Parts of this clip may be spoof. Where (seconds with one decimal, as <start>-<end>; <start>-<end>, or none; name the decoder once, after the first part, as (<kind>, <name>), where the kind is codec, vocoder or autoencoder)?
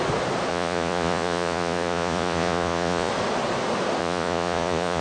0.5-3.1 (vocoder, Vocos); 4.0-5.0